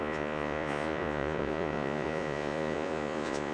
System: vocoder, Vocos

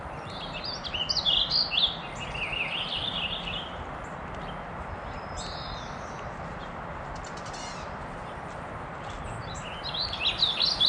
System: none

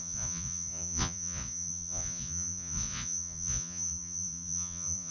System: vocoder, Vocos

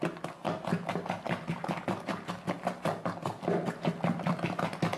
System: none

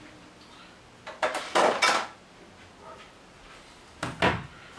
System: none